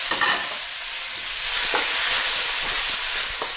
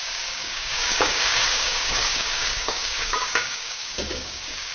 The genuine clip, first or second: first